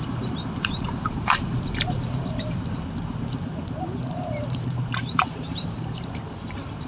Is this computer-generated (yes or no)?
yes